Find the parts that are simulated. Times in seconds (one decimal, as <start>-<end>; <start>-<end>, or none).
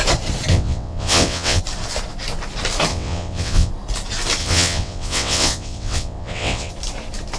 0.5-1.6; 2.9-3.7; 4.4-6.7